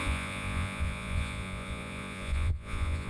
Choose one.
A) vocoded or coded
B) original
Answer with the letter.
A